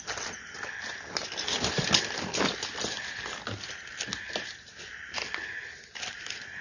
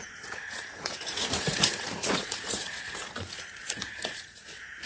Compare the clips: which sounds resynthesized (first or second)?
second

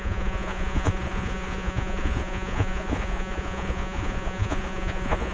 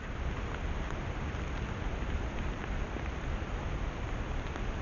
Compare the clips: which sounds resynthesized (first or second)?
first